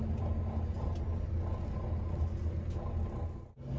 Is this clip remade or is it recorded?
recorded